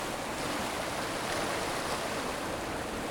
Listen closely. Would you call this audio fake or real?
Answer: real